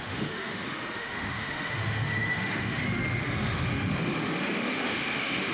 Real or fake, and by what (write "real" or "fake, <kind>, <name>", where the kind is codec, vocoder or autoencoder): fake, autoencoder, DAC-VAE